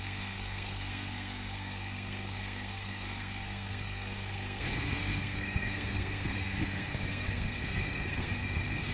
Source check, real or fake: fake